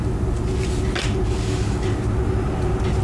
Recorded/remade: recorded